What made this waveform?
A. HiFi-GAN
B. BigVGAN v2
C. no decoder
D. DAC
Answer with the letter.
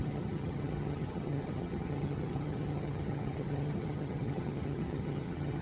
A